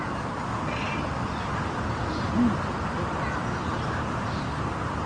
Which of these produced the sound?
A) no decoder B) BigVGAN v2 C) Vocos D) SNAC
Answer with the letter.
A